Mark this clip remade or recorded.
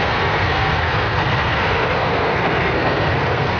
remade